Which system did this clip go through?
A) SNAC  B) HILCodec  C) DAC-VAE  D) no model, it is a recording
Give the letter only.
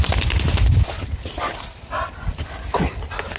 D